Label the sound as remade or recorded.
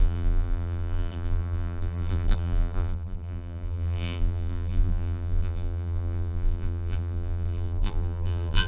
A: remade